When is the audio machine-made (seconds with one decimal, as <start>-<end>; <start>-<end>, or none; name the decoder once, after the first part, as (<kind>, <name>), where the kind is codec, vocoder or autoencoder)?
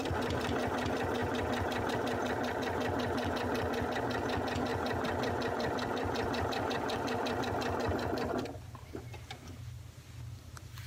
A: 1.2-1.9 (vocoder, BigVGAN v2); 4.7-7.4